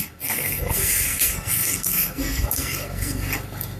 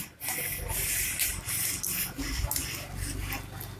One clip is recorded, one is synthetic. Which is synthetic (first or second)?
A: first